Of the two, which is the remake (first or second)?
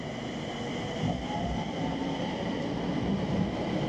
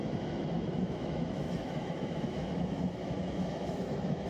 second